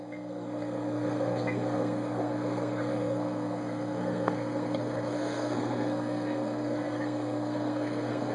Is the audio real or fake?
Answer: fake